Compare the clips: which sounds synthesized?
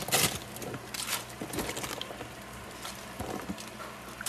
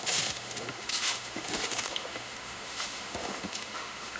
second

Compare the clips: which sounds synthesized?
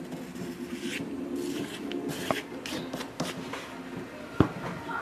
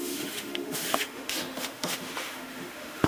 second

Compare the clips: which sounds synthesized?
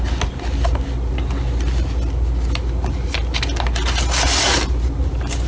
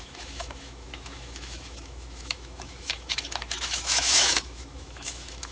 second